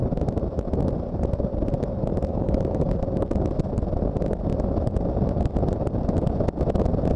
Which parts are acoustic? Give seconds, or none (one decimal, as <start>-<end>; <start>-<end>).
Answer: 0.0-2.0; 3.0-7.2